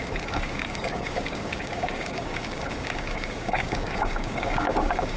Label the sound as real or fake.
fake